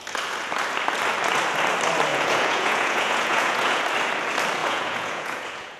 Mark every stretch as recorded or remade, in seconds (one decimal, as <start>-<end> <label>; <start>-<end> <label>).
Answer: 0.0-2.1 recorded; 2.1-3.8 remade; 3.8-4.6 recorded; 4.6-5.8 remade